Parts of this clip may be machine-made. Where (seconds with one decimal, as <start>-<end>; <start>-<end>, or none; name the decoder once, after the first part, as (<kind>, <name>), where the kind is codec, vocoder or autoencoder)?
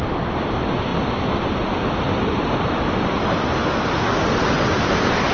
none